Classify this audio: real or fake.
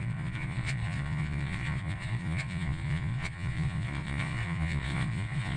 fake